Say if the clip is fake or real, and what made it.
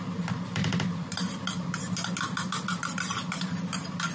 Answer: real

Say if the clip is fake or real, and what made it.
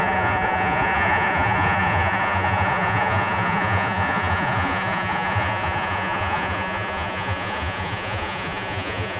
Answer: fake, vocoder, Vocos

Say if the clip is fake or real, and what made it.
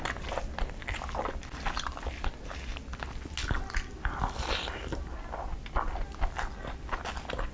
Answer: real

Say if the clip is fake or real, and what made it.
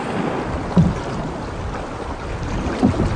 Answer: real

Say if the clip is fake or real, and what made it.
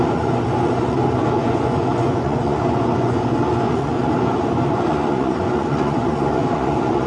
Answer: fake, vocoder, Vocos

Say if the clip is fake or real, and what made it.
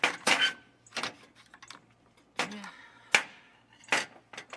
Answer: real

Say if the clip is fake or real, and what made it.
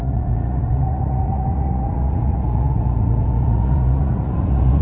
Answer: fake, vocoder, Vocos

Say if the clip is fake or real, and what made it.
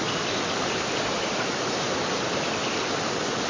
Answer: real